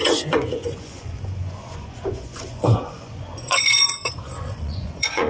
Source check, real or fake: fake